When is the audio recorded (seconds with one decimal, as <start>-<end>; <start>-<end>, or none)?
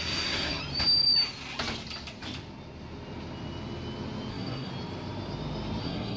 0.6-4.3; 4.7-5.8